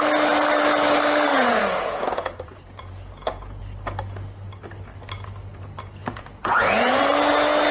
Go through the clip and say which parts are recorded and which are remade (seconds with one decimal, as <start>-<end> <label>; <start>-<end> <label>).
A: 0.0-1.3 recorded; 1.3-3.6 remade; 3.6-6.0 recorded; 6.0-7.0 remade; 7.0-7.7 recorded